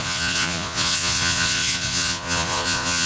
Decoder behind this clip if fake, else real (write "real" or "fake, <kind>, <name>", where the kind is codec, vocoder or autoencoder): fake, vocoder, Vocos